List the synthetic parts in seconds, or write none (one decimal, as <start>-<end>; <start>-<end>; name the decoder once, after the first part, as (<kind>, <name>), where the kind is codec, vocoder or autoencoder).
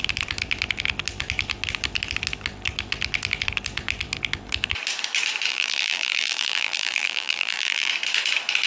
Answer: 5.5-7.9 (vocoder, BigVGAN v2)